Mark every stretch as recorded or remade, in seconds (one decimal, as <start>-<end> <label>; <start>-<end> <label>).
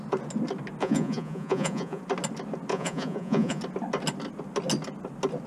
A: 0.0-0.8 recorded; 0.8-2.0 remade; 2.0-2.7 recorded; 2.7-3.6 remade; 3.6-5.5 recorded